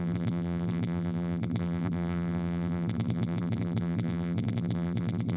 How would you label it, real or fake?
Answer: fake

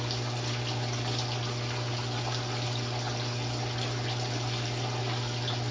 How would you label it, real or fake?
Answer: real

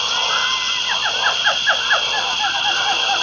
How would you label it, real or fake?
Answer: real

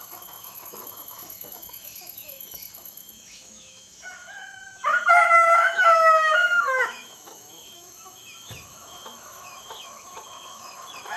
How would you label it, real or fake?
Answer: fake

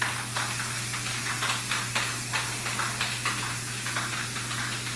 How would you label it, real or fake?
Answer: real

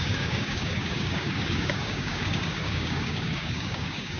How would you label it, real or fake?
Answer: fake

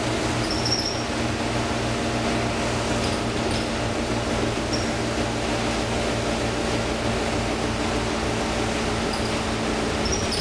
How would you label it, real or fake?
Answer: real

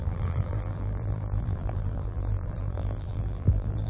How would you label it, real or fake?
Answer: fake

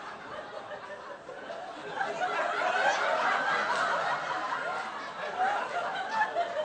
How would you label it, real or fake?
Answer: real